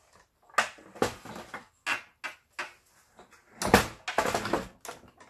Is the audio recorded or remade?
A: recorded